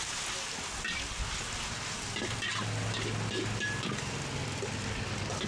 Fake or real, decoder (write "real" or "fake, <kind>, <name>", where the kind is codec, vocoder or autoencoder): real